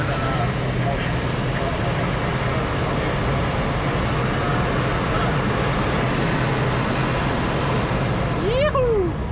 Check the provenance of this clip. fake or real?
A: real